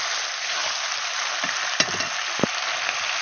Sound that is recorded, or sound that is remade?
recorded